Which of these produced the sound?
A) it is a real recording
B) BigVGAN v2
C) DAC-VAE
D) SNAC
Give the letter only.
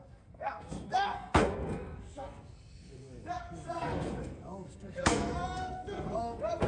D